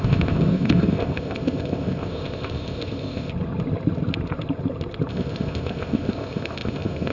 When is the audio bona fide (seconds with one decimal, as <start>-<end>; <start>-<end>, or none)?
3.3-5.1

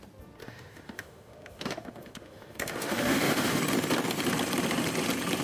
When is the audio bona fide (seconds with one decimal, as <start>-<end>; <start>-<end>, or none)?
0.0-0.4; 3.6-5.4

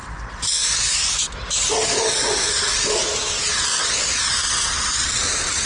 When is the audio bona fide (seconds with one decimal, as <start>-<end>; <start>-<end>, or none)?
0.0-5.7

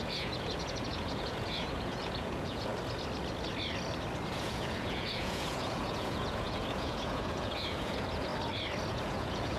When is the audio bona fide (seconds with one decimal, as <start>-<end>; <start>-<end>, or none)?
2.7-4.3; 8.3-8.9

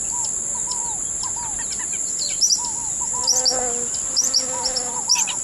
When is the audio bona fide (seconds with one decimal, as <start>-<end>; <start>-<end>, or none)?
0.0-5.4